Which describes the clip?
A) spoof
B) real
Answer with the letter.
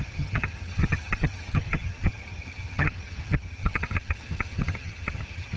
A